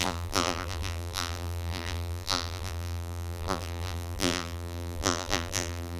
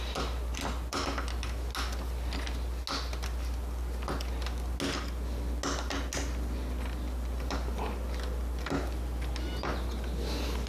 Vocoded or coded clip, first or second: first